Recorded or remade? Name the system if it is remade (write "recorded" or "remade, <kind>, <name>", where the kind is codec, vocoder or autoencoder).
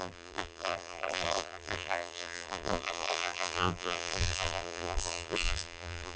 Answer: remade, vocoder, BigVGAN v2